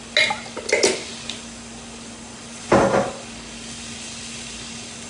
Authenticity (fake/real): real